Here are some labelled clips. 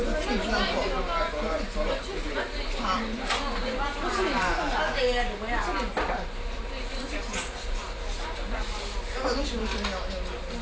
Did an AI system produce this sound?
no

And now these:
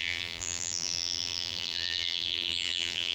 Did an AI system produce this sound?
yes